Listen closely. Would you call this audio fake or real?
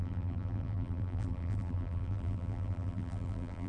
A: fake